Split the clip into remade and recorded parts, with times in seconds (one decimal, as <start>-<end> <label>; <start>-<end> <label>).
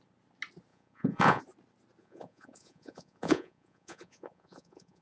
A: 0.0-0.7 recorded; 0.7-1.4 remade; 1.4-2.0 recorded; 2.0-5.0 remade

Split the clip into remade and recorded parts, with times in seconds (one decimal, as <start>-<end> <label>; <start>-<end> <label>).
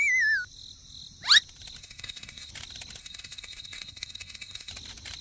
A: 0.0-1.8 recorded; 1.8-2.5 remade; 2.5-3.0 recorded; 3.0-4.7 remade; 4.7-5.2 recorded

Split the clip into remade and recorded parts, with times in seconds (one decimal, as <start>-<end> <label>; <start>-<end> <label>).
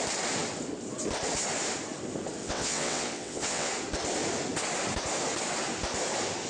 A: 0.0-2.4 recorded; 2.4-3.7 remade; 3.7-6.5 recorded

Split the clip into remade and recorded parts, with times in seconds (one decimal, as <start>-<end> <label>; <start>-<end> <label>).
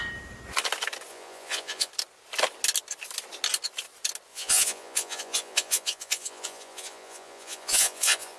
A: 0.0-1.1 recorded; 1.1-1.9 remade; 1.9-4.3 recorded; 4.3-8.4 remade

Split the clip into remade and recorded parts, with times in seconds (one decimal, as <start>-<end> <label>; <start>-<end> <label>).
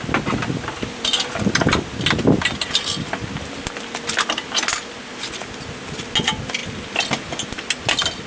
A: 0.0-8.3 recorded